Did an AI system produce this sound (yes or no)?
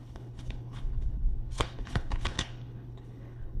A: yes